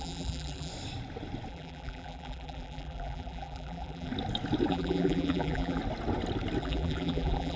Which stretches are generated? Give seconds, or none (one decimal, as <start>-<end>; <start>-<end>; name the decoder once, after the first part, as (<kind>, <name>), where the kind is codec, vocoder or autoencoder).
0.0-0.7 (vocoder, BigVGAN v2); 1.5-4.1; 4.7-5.8; 6.6-7.6